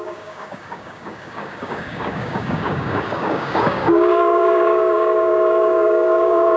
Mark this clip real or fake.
fake